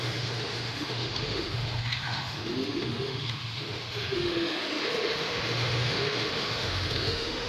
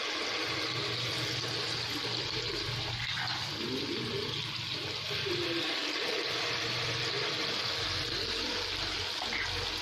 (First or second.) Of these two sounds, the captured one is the second